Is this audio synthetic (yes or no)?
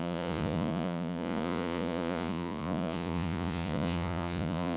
yes